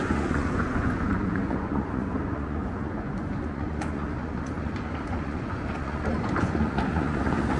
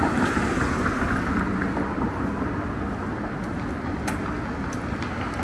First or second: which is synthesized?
first